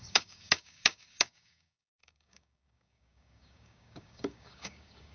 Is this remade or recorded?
remade